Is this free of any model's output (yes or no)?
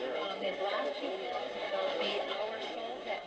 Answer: no